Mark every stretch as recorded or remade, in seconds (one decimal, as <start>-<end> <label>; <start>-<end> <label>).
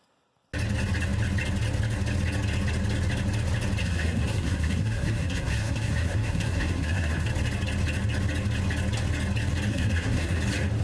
0.0-3.8 recorded; 3.8-7.3 remade; 7.3-9.7 recorded; 9.7-10.4 remade; 10.4-10.8 recorded